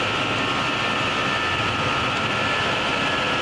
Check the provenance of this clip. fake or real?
real